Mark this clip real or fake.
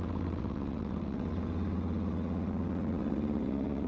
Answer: fake